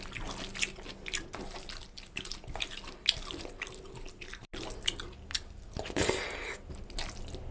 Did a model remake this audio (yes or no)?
no